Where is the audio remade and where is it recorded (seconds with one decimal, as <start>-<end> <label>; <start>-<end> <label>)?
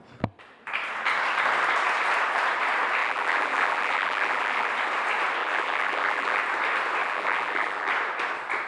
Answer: 0.0-3.0 recorded; 3.0-4.7 remade; 4.7-5.4 recorded; 5.4-6.4 remade; 6.4-7.0 recorded; 7.0-7.9 remade; 7.9-8.7 recorded